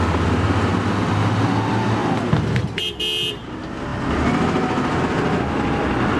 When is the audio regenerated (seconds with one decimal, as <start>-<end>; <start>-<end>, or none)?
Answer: none